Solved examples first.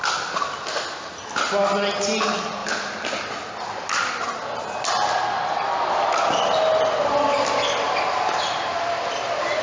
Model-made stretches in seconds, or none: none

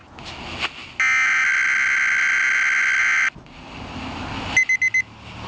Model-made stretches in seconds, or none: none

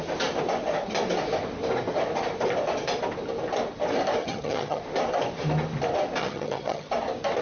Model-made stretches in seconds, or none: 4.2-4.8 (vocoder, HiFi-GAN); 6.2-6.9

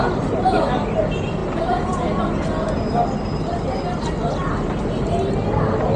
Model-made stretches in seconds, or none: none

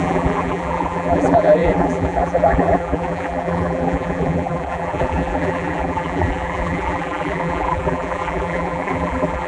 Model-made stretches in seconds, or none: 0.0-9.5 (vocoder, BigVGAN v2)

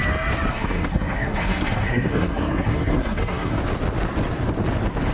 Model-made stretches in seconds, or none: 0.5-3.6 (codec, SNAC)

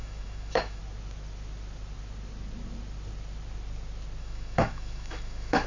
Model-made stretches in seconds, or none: 0.0-0.8 (autoencoder, DAC-VAE); 4.2-5.7